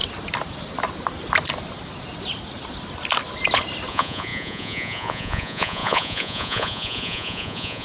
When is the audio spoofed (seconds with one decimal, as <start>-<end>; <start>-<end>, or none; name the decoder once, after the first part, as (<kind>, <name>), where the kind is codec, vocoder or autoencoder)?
3.9-7.8 (vocoder, Vocos)